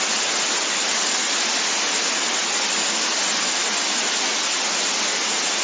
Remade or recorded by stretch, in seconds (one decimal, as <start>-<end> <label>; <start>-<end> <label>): 0.0-5.6 recorded